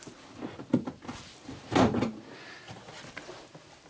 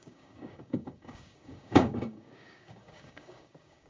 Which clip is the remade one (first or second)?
second